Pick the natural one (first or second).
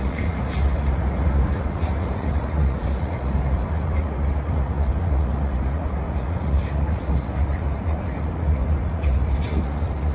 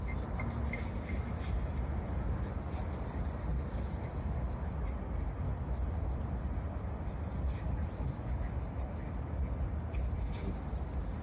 second